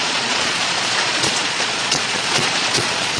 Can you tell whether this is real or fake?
fake